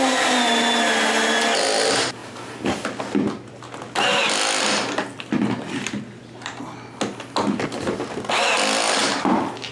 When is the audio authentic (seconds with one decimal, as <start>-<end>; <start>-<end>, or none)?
0.0-9.7